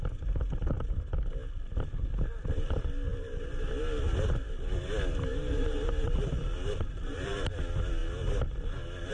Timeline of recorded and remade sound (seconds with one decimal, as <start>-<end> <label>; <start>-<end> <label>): 0.0-5.3 recorded; 5.3-7.4 remade; 7.4-9.1 recorded